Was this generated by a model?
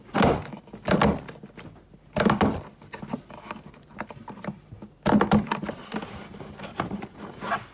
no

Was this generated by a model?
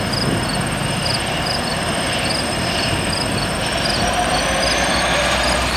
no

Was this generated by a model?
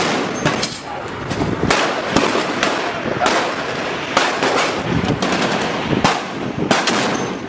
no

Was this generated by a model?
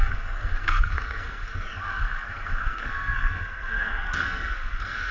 yes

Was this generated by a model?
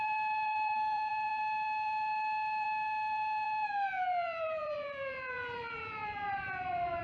yes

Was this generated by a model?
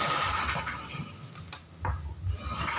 no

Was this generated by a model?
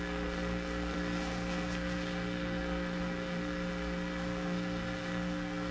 yes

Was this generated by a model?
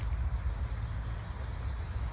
no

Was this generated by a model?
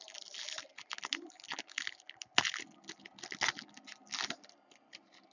no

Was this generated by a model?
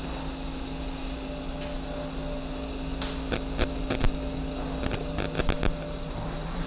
no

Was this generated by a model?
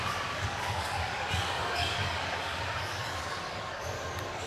yes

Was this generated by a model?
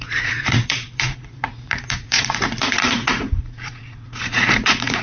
yes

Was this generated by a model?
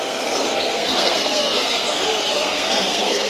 yes